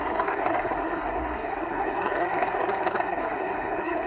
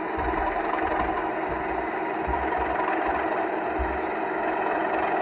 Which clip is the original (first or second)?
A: second